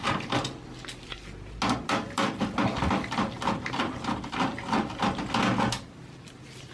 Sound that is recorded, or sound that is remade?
recorded